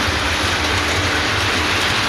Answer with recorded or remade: recorded